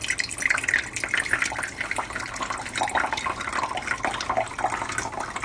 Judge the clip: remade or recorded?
recorded